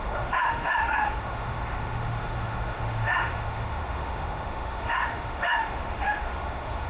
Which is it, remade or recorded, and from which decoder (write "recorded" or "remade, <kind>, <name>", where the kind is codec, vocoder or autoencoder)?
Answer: remade, autoencoder, DAC-VAE